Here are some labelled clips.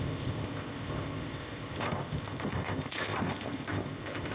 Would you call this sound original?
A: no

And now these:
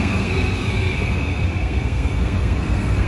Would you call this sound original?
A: no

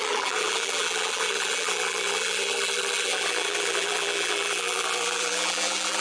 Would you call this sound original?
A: no